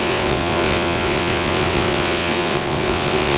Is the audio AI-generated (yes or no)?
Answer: yes